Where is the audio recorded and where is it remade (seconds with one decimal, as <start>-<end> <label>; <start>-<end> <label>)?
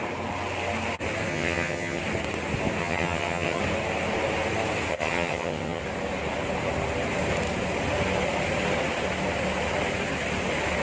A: 0.0-1.3 recorded; 1.3-2.0 remade; 2.0-2.8 recorded; 2.8-3.6 remade; 3.6-4.9 recorded; 4.9-5.8 remade; 5.8-10.8 recorded